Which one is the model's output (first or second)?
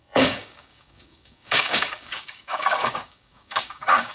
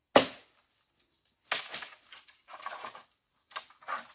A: first